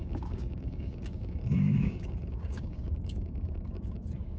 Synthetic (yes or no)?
yes